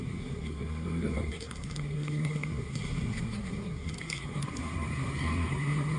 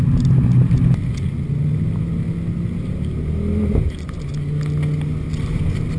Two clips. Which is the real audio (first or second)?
second